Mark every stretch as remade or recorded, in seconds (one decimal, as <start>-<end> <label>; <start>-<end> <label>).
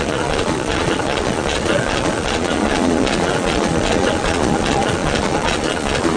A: 0.0-6.2 remade